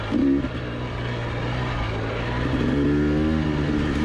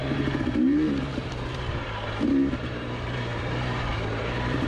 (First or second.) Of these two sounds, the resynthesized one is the second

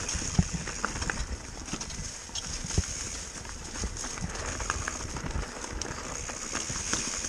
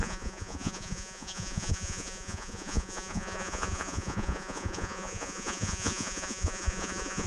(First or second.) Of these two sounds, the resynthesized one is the second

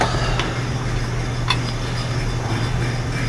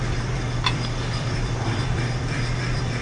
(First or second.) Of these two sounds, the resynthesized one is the second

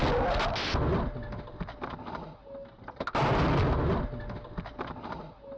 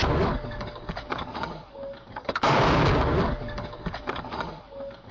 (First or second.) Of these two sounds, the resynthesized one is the second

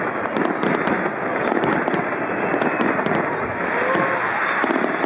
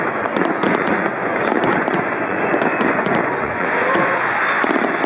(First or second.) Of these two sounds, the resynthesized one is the second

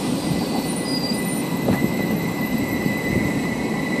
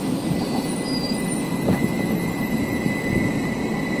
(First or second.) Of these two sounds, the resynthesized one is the first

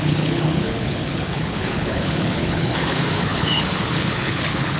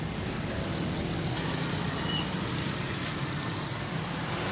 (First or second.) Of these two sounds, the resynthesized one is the first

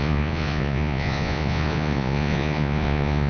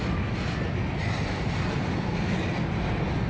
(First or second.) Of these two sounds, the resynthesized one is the first